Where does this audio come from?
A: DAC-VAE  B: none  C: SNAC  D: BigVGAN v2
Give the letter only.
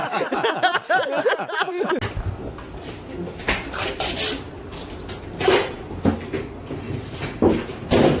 B